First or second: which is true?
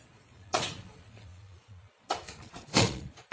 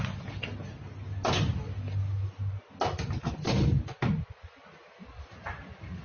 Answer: second